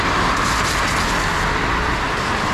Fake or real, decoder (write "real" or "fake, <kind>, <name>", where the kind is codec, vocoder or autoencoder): real